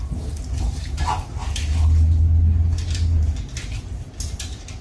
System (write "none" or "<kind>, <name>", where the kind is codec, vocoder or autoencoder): none